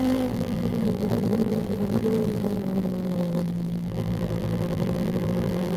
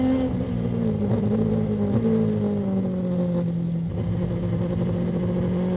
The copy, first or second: first